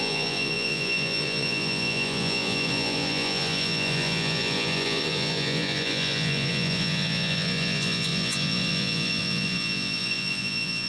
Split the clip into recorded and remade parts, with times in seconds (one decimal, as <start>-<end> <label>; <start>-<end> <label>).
0.0-10.9 remade